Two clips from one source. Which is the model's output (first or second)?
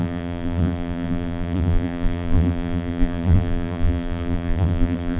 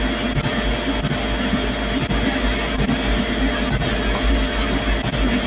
first